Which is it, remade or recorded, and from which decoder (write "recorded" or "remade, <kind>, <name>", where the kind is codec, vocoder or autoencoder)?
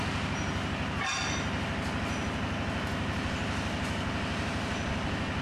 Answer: recorded